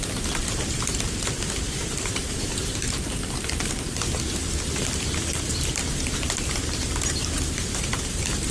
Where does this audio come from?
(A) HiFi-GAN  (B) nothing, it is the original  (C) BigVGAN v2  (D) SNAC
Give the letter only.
C